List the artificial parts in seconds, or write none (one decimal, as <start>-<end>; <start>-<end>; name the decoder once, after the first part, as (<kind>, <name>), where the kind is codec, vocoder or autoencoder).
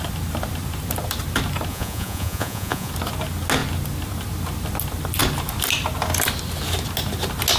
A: 1.7-2.9 (vocoder, Vocos)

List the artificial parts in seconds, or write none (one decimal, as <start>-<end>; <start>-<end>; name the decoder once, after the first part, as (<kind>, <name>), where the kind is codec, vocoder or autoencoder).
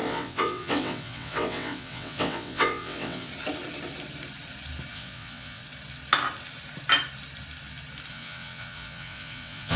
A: 0.0-3.3 (vocoder, WaveNeXt); 4.9-5.6; 8.1-9.8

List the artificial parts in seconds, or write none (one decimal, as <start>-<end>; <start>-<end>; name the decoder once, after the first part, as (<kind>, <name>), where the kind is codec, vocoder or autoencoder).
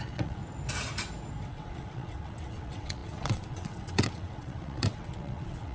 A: 0.0-0.4 (vocoder, WaveNeXt); 1.5-5.7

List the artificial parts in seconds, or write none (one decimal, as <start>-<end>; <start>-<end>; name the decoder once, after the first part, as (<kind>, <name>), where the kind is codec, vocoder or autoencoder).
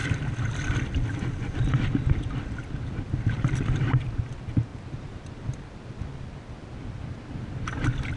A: 4.7-5.3 (vocoder, BigVGAN v2)